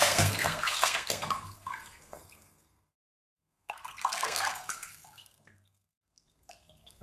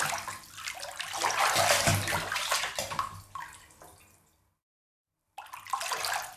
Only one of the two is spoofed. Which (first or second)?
first